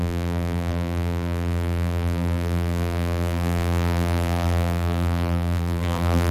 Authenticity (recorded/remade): remade